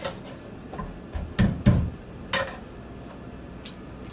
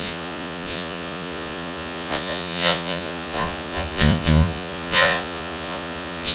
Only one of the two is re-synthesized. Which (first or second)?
second